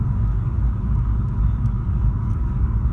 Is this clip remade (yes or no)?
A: yes